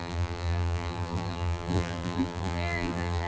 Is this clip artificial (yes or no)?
yes